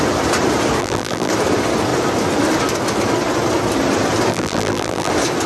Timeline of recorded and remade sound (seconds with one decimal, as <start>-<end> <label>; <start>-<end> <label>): 0.0-0.8 recorded; 0.8-1.3 remade; 1.3-4.3 recorded; 4.3-5.1 remade; 5.1-5.5 recorded